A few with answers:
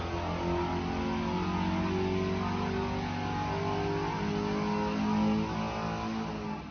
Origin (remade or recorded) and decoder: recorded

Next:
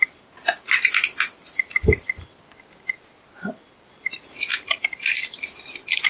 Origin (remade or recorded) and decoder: recorded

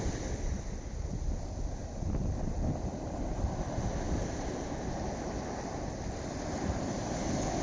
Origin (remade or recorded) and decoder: recorded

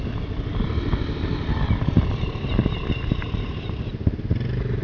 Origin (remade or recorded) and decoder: recorded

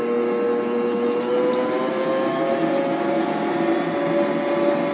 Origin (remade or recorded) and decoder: recorded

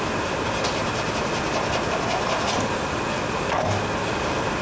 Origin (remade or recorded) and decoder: recorded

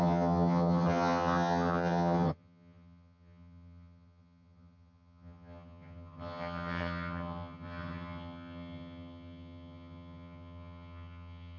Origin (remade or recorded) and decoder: remade, vocoder, HiFi-GAN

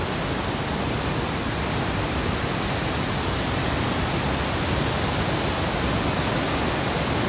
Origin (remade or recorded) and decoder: recorded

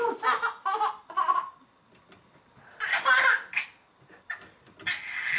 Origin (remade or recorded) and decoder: recorded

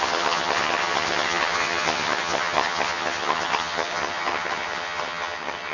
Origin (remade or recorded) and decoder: remade, vocoder, HiFi-GAN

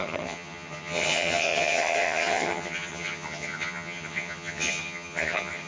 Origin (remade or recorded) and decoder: remade, vocoder, HiFi-GAN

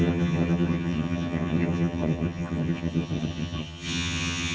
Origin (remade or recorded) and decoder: remade, vocoder, HiFi-GAN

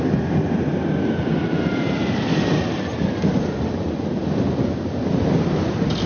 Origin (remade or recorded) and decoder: recorded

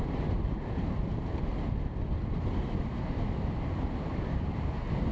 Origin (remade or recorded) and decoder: recorded